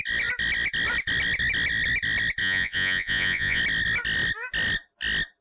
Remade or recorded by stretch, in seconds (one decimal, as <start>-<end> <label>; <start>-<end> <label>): 0.0-2.4 recorded; 2.4-3.6 remade; 3.6-5.4 recorded